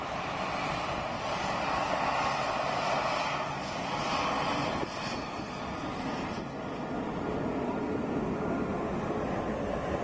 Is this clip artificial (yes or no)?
no